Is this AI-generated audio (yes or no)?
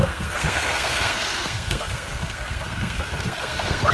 yes